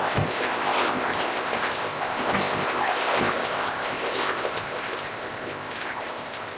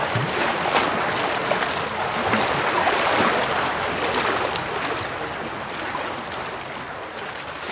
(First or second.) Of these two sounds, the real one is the second